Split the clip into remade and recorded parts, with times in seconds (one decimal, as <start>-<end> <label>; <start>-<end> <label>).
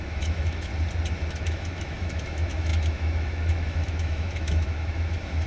0.0-0.7 remade; 0.7-1.3 recorded; 1.3-5.5 remade